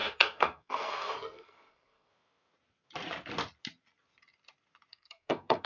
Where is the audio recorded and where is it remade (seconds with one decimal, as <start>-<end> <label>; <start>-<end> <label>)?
0.0-2.1 remade; 2.1-4.9 recorded; 4.9-5.7 remade